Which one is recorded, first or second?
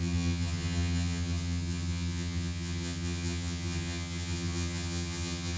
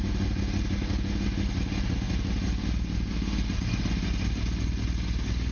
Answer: second